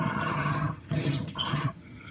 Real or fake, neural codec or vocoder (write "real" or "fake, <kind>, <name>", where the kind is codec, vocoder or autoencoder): fake, vocoder, HiFi-GAN